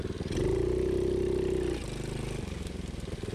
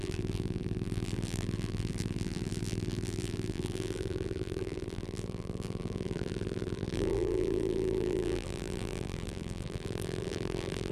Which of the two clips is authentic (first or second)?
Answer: first